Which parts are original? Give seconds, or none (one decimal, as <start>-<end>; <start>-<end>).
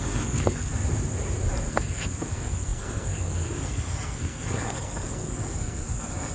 0.7-1.7